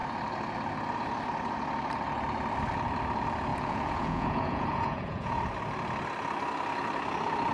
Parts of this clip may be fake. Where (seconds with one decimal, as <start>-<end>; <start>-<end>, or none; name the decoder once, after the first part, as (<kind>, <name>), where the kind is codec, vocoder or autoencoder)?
3.5-5.4 (vocoder, Vocos)